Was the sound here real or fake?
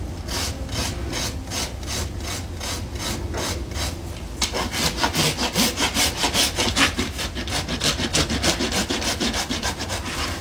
real